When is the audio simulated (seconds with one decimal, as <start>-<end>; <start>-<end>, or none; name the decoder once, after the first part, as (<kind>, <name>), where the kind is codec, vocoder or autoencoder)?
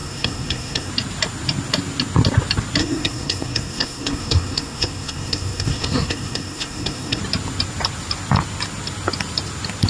0.0-0.9 (codec, SNAC); 2.8-7.2